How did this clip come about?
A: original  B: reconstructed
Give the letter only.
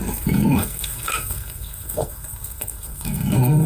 B